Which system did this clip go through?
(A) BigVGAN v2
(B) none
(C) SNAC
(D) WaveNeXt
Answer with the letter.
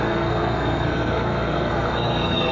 C